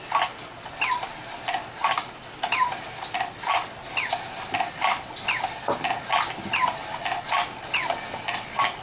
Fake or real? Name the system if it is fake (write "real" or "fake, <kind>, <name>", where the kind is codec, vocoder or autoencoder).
real